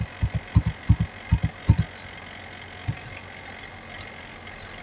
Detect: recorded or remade recorded